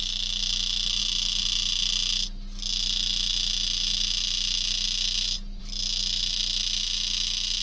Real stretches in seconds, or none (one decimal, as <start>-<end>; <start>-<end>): 0.0-7.6